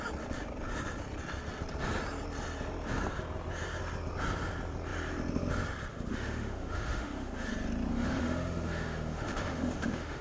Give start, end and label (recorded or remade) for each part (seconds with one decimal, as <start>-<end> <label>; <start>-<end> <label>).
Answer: 0.0-5.9 recorded; 5.9-7.5 remade; 7.5-7.9 recorded; 7.9-10.2 remade